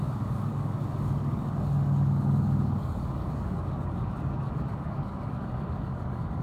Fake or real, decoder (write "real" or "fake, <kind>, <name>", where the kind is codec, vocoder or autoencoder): fake, codec, DAC